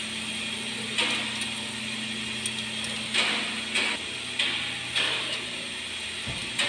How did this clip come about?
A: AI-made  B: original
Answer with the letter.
B